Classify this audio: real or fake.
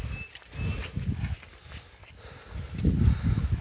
real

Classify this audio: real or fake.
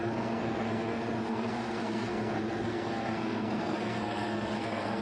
fake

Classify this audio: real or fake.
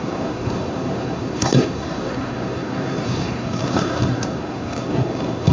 fake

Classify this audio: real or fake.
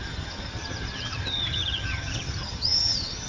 fake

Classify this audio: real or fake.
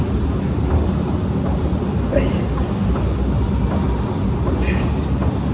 real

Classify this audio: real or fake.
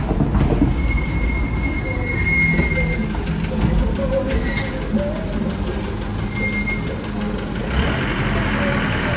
real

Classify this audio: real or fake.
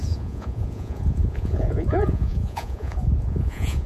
fake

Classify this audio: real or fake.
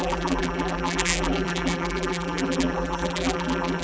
fake